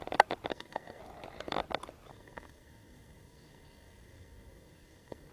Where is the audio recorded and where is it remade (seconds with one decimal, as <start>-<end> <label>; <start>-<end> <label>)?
0.0-0.5 recorded; 0.5-1.0 remade; 1.0-2.1 recorded; 2.1-5.3 remade